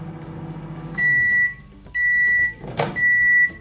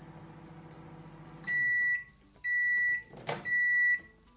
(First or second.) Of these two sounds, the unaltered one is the second